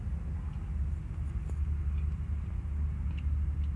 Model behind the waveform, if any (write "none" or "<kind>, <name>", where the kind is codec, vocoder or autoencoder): none